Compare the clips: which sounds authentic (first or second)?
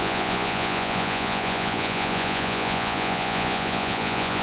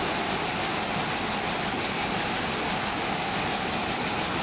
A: second